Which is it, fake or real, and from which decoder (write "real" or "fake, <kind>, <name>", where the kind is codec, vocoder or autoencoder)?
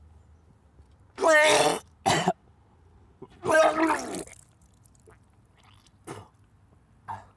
real